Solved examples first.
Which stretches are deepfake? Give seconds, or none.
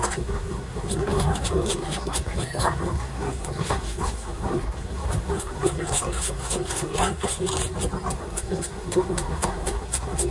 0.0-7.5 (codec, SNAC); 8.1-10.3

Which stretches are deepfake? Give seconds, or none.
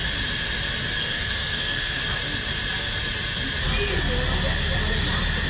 1.0-2.0 (codec, SNAC)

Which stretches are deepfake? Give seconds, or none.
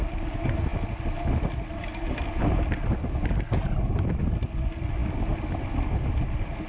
none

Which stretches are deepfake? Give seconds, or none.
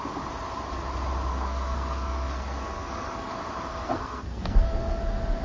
1.3-3.3 (codec, SNAC); 3.7-5.0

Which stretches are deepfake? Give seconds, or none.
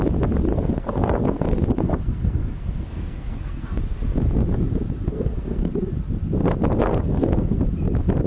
0.5-3.8 (codec, SNAC); 5.1-5.7; 6.8-7.6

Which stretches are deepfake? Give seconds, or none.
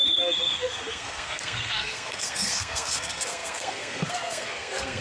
0.0-5.0 (codec, SNAC)